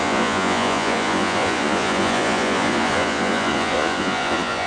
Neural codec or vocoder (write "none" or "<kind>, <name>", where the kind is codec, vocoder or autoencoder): vocoder, Vocos